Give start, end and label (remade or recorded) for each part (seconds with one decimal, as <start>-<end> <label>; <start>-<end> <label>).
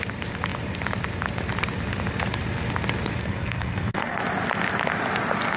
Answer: 0.0-3.2 recorded; 3.2-4.2 remade; 4.2-5.6 recorded